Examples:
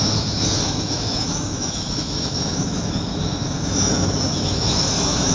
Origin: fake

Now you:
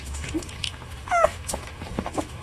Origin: fake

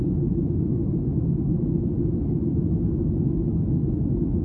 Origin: fake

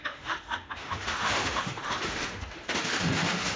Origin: fake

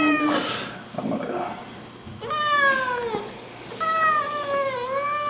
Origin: real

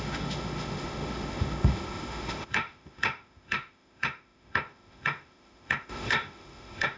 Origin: fake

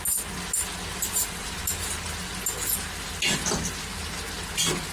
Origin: real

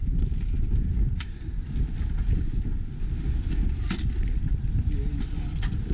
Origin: real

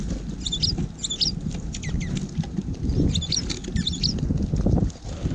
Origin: real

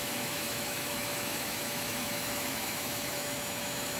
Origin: fake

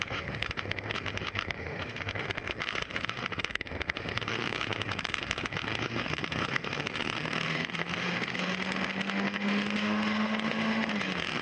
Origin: fake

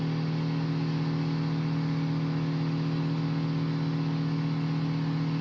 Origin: real